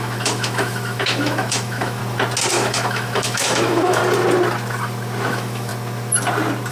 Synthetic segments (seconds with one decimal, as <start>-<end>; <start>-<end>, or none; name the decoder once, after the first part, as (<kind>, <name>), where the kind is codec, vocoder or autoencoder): 0.0-2.0 (autoencoder, DAC-VAE); 2.5-4.0; 5.3-5.7